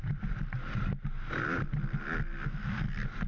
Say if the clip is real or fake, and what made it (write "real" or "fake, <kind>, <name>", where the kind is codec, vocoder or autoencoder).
real